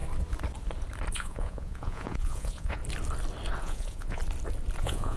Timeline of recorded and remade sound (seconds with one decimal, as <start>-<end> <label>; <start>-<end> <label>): 0.0-1.1 recorded; 1.1-2.8 remade; 2.8-3.6 recorded; 3.6-4.2 remade; 4.2-4.8 recorded; 4.8-5.2 remade